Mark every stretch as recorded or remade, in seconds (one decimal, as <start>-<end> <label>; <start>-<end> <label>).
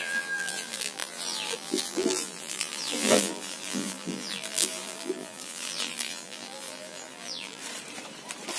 0.0-7.6 remade; 7.6-8.6 recorded